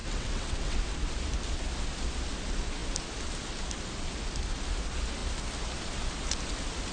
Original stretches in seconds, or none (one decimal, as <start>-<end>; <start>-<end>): 0.8-6.9